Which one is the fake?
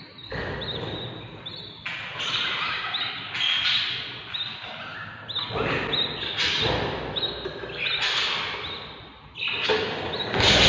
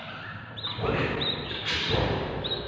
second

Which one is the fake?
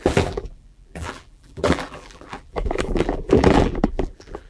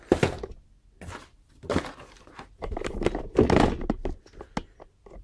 first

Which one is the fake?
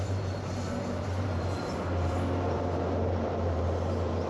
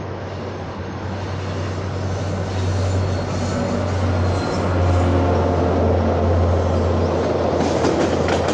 first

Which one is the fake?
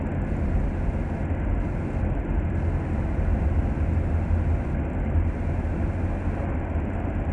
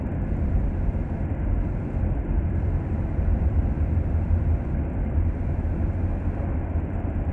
second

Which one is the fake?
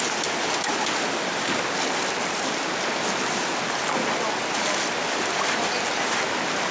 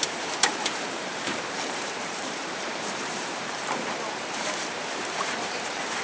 second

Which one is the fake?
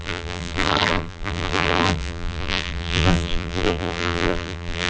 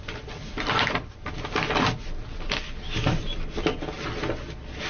first